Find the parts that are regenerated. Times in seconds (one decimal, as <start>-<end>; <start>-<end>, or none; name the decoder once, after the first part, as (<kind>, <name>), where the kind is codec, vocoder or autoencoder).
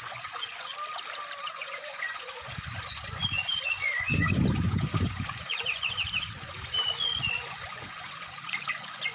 0.0-0.7 (vocoder, Vocos); 1.4-9.1